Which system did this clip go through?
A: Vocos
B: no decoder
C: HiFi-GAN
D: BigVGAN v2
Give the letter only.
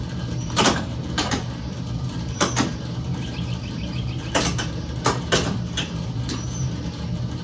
D